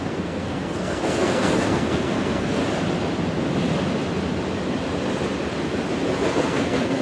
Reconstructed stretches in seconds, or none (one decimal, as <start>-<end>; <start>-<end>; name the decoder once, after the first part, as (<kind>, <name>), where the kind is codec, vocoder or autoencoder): 0.0-2.6 (codec, SNAC); 6.3-7.0